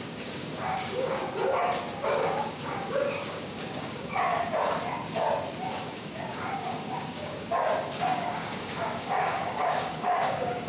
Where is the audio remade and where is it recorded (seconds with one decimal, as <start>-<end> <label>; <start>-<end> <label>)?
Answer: 0.0-1.2 remade; 1.2-2.0 recorded; 2.0-4.3 remade; 4.3-5.7 recorded; 5.7-10.7 remade